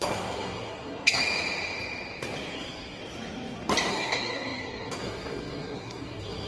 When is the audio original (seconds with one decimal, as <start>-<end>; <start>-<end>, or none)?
1.2-2.5; 3.0-3.9